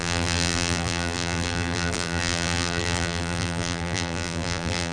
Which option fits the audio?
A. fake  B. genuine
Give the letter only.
A